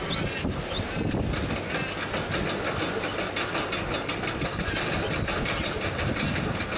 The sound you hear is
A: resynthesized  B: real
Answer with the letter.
B